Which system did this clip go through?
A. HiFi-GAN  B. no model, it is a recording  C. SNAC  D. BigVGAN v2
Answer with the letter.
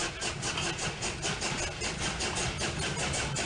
B